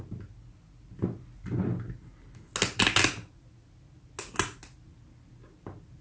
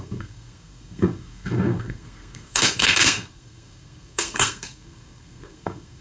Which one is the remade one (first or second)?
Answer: second